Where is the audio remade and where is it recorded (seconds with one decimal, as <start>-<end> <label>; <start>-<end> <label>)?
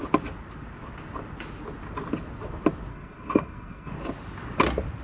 0.0-2.9 recorded; 2.9-3.9 remade; 3.9-5.0 recorded